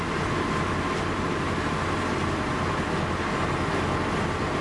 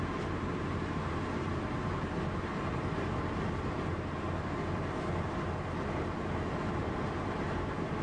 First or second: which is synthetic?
second